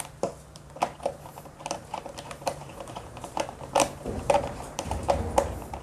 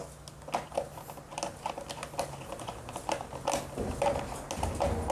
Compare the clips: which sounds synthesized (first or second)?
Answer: first